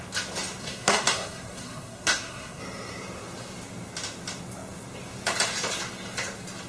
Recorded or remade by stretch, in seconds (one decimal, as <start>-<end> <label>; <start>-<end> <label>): 0.0-0.6 recorded; 0.6-2.6 remade; 2.6-6.7 recorded